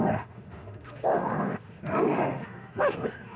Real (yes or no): no